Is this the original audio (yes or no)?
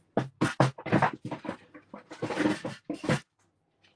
yes